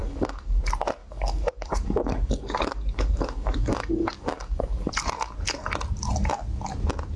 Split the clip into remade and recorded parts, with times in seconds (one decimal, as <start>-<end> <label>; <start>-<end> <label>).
0.0-0.6 remade; 0.6-1.0 recorded; 1.0-4.9 remade; 4.9-7.2 recorded